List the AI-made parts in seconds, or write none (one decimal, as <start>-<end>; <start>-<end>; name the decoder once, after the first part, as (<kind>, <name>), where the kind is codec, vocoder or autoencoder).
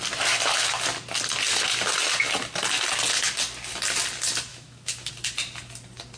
4.5-5.1 (autoencoder, DAC-VAE)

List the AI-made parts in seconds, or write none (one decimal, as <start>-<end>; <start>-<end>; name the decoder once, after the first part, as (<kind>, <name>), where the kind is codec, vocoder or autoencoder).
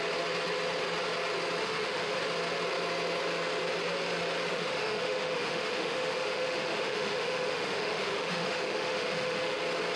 1.6-2.2 (autoencoder, DAC-VAE); 4.5-9.6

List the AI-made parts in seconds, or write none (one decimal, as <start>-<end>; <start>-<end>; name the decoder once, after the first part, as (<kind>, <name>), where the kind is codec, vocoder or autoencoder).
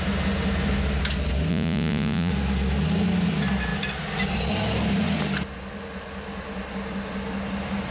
1.5-2.3 (vocoder, Vocos)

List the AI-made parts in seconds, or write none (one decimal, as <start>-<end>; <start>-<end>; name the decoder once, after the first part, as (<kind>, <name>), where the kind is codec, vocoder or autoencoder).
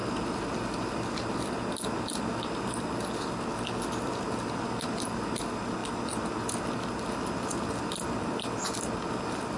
none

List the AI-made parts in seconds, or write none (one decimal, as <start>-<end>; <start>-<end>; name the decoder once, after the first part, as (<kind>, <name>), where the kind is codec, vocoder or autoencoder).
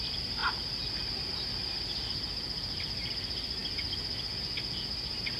none